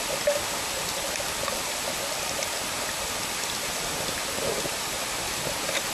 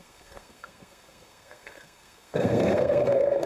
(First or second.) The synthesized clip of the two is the second